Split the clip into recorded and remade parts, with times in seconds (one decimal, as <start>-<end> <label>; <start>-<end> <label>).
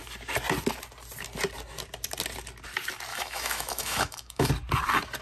0.0-3.1 recorded; 3.1-4.5 remade; 4.5-5.2 recorded